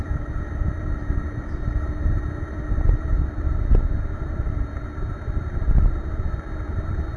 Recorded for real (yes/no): no